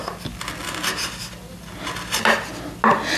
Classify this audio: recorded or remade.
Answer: recorded